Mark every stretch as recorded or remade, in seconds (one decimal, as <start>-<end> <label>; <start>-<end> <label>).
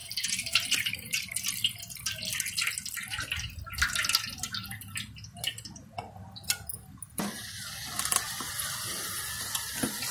0.0-1.2 remade; 1.2-10.1 recorded